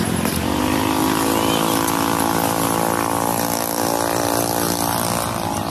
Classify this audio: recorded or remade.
recorded